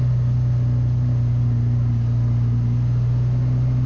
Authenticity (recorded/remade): recorded